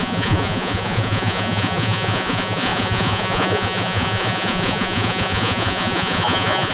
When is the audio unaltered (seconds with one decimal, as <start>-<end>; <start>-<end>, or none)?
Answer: none